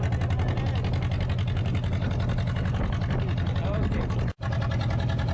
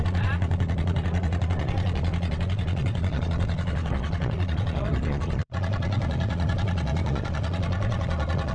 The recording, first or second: first